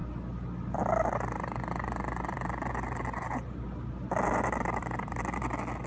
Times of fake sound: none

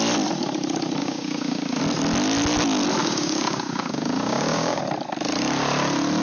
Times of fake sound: 1.0-1.8 (codec, DAC); 3.0-4.8

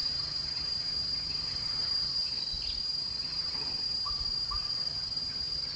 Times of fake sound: 0.0-2.3 (vocoder, HiFi-GAN); 2.8-4.1; 4.9-5.8

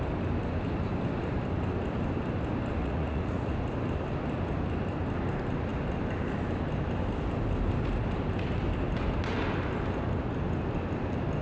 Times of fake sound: 2.8-3.5 (vocoder, Vocos)

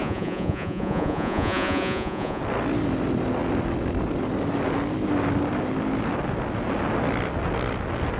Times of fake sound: 0.0-2.4 (vocoder, Vocos)

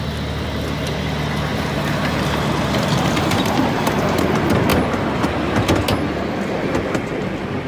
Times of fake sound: 1.5-4.2 (vocoder, BigVGAN v2)